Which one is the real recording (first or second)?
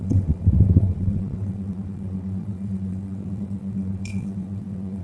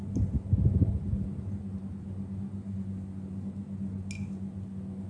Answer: second